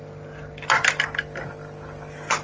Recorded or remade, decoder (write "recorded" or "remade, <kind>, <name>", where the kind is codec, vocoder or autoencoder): recorded